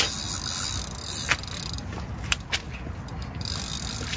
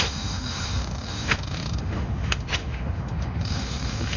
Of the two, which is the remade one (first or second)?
second